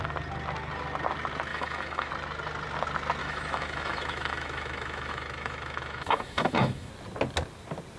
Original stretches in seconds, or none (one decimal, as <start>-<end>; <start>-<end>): 0.0-1.5; 2.1-3.2; 6.9-8.0